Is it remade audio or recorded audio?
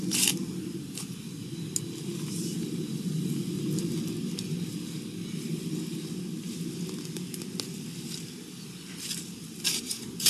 recorded